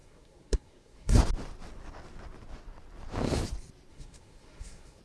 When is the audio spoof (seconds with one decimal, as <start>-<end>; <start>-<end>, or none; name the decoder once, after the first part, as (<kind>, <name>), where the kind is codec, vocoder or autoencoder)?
0.0-1.2 (codec, SNAC); 3.9-5.0